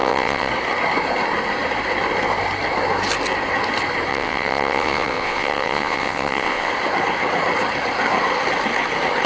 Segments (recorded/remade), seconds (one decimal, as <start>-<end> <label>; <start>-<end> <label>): 0.0-0.5 remade; 0.5-4.1 recorded; 4.1-6.7 remade; 6.7-9.3 recorded